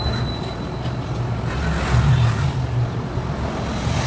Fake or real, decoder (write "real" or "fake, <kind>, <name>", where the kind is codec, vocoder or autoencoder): real